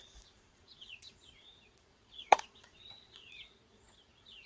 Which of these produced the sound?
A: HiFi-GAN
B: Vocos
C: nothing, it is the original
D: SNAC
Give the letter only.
B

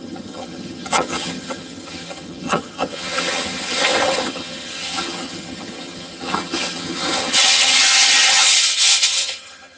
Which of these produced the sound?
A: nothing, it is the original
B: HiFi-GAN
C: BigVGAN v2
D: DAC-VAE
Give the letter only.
B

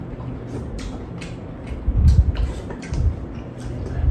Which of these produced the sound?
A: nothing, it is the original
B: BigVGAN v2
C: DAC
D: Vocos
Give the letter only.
A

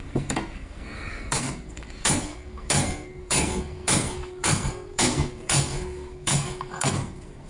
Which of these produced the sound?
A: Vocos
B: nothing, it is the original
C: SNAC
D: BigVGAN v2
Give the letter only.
C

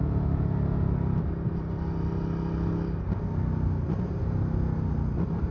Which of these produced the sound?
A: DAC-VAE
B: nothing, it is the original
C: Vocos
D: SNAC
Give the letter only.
B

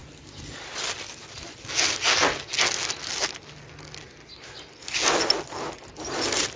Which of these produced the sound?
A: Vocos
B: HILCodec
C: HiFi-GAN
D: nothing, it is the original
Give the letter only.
D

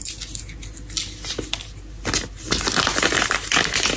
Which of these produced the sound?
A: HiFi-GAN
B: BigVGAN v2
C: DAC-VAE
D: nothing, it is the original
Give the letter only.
D